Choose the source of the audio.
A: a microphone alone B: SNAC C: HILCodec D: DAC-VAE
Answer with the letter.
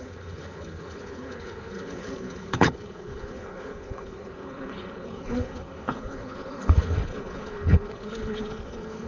C